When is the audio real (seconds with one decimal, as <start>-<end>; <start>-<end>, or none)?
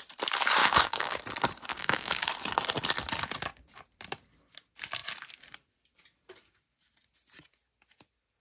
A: 0.0-0.6; 1.2-1.7; 2.3-8.4